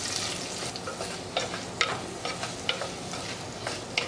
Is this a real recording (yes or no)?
yes